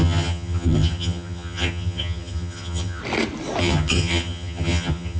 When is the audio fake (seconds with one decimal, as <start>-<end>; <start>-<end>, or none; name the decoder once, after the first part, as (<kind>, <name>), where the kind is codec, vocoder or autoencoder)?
0.0-3.0 (vocoder, HiFi-GAN); 3.6-5.2